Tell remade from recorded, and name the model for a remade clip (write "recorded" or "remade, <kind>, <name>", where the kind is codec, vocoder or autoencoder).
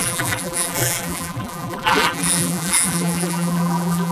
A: remade, vocoder, BigVGAN v2